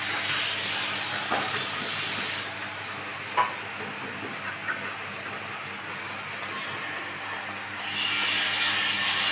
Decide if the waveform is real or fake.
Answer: real